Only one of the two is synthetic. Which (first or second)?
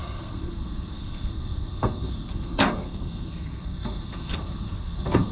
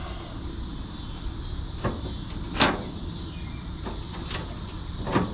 first